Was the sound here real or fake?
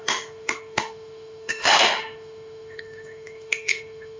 fake